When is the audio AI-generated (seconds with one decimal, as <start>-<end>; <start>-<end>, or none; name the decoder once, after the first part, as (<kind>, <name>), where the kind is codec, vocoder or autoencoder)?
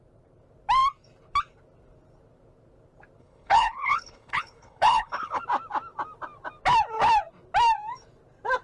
3.2-5.4 (codec, HILCodec)